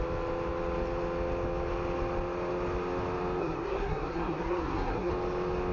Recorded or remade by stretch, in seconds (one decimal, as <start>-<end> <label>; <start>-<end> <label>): 0.0-3.4 recorded; 3.4-5.1 remade; 5.1-5.7 recorded